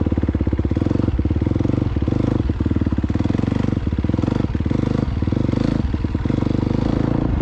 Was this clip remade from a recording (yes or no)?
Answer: no